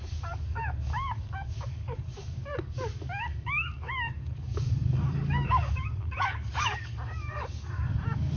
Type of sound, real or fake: fake